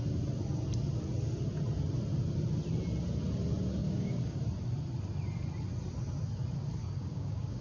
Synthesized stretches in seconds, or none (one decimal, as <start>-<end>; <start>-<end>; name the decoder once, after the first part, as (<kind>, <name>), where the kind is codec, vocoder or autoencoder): 3.8-4.4 (codec, DAC); 6.8-7.6